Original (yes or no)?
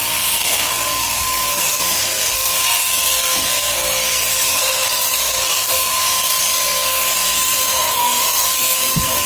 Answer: no